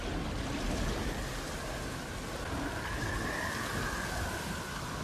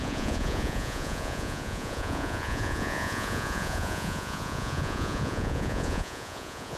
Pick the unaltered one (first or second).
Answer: first